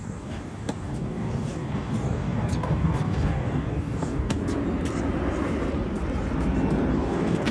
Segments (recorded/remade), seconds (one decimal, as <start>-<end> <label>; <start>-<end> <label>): 0.0-4.4 remade; 4.4-6.9 recorded; 6.9-7.5 remade